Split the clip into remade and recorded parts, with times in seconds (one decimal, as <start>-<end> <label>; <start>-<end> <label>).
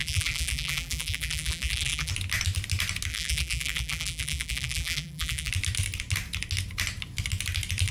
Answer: 0.0-2.1 remade; 2.1-3.1 recorded; 3.1-5.5 remade; 5.5-7.9 recorded